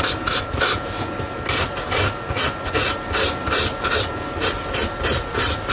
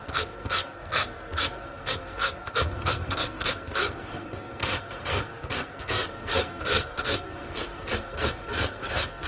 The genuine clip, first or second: first